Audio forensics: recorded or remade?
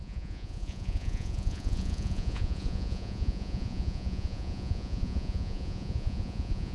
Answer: remade